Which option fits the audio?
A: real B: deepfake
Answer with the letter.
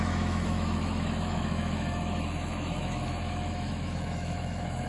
B